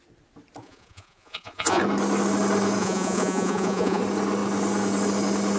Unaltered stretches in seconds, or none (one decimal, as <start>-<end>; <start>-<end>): 0.0-0.6; 1.8-2.8; 4.0-5.6

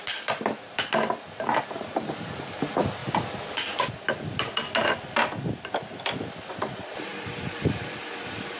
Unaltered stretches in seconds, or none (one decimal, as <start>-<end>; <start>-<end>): 3.0-6.3

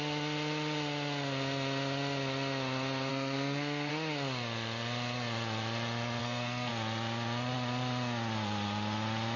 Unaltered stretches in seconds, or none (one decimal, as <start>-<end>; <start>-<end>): 0.0-3.1; 3.9-6.2; 6.7-9.4